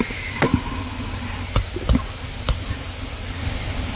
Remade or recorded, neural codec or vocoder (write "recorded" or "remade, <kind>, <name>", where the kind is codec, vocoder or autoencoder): recorded